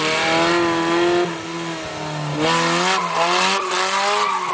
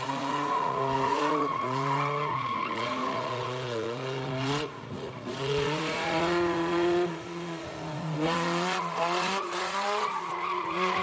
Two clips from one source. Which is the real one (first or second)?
first